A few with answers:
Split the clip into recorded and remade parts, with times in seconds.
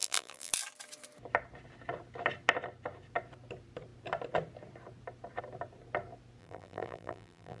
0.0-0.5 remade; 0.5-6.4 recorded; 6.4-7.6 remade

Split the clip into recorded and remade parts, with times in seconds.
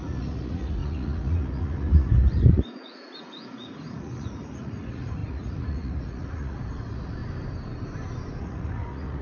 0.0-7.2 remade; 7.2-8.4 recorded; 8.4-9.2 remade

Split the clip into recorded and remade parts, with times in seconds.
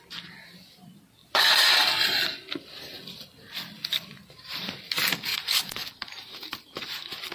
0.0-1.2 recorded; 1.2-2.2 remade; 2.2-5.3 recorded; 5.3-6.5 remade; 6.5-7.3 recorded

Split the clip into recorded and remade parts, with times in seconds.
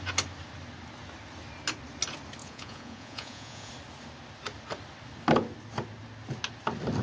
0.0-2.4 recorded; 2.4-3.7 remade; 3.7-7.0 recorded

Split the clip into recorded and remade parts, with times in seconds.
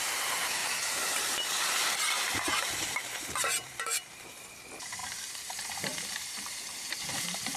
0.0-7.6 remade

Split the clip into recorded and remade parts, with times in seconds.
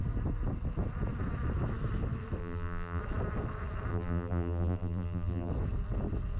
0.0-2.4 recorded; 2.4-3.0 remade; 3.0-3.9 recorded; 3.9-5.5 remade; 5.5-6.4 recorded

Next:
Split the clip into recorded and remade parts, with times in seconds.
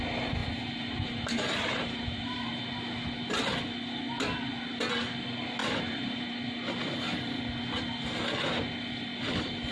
0.0-0.4 recorded; 0.4-2.6 remade; 2.6-5.6 recorded; 5.6-6.4 remade; 6.4-9.7 recorded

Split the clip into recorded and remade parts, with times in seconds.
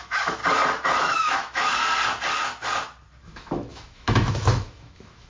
0.0-0.4 remade; 0.4-1.0 recorded; 1.0-1.7 remade; 1.7-3.2 recorded; 3.2-5.3 remade